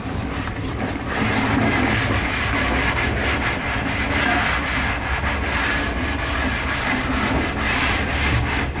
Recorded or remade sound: recorded